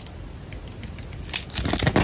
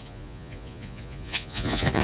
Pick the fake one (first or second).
second